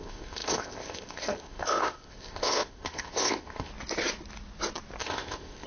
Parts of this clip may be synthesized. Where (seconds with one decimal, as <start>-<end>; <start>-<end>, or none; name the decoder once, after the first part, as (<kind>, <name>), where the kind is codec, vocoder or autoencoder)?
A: 0.0-3.7 (codec, ZipCodec); 5.0-5.7